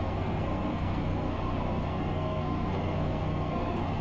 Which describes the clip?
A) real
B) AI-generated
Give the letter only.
B